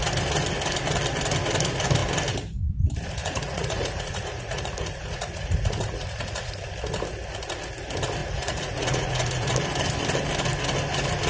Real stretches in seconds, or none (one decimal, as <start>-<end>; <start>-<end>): 0.0-3.2; 6.5-8.2; 9.5-11.3